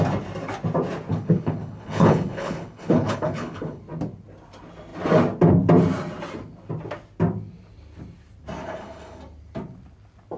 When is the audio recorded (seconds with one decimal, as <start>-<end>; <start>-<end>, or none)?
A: 0.0-1.1; 3.8-8.6; 9.2-10.4